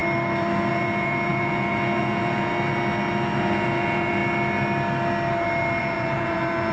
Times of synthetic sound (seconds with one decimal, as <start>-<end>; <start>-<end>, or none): 0.7-2.5; 3.4-4.2; 5.8-6.7

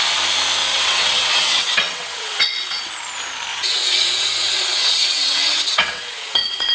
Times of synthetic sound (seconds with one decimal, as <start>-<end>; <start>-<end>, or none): 0.7-2.9; 3.5-6.7

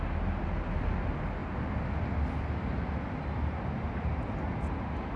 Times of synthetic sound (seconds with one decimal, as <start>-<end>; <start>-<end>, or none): none

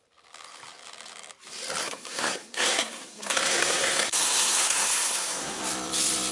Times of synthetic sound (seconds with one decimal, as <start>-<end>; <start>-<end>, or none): 1.8-5.6